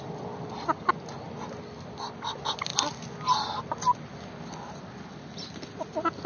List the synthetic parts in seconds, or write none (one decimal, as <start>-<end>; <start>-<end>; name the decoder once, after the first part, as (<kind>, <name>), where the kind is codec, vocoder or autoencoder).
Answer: none